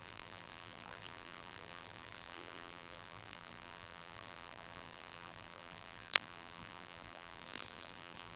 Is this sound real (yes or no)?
no